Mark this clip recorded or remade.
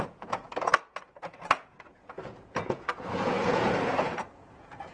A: remade